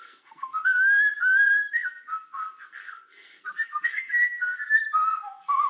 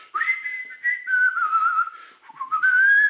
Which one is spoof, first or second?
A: first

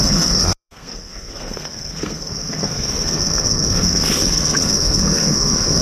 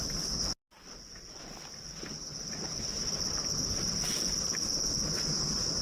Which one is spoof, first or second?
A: first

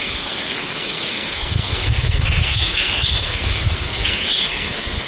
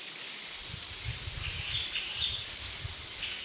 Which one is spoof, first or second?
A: first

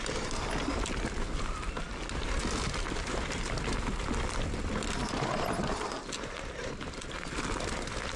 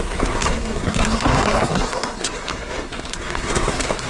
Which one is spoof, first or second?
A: second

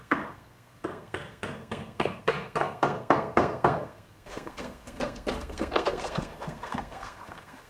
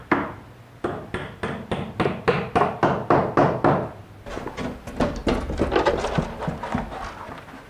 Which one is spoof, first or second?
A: first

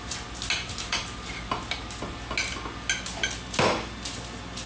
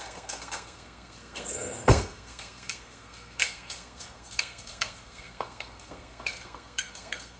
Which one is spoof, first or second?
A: second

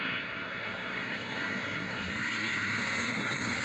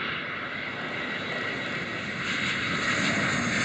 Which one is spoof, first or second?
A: first